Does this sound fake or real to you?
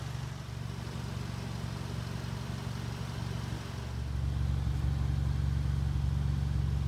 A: real